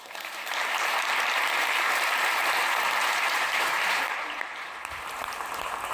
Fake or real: fake